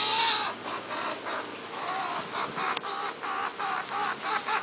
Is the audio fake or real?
real